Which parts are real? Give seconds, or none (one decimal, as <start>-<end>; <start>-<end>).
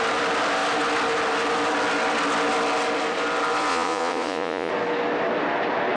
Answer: 0.0-3.7; 4.7-6.0